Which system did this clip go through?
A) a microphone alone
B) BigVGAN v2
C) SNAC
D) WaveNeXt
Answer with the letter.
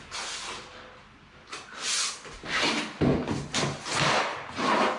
A